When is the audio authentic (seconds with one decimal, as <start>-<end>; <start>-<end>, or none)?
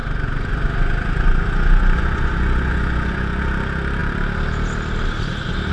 3.4-5.7